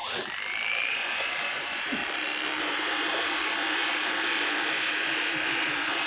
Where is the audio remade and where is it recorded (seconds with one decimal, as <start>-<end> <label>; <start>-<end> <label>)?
0.0-0.9 recorded; 0.9-2.0 remade; 2.0-2.6 recorded; 2.6-6.1 remade